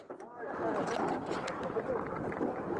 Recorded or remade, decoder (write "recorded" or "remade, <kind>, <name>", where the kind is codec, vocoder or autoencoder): recorded